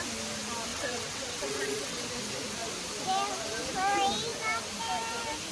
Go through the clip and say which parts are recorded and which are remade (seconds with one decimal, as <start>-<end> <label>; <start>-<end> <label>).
0.0-0.7 recorded; 0.7-2.0 remade; 2.0-5.5 recorded